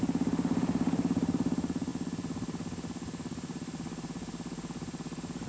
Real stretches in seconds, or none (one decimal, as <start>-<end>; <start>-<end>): 0.0-5.5